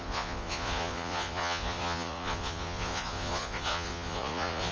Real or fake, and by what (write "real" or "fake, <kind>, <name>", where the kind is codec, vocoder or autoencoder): fake, vocoder, Vocos